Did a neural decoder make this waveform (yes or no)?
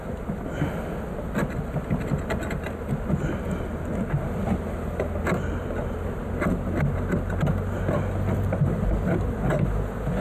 no